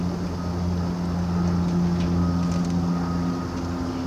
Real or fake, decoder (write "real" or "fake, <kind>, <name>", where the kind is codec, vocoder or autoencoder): real